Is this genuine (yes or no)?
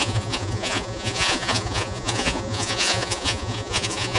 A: no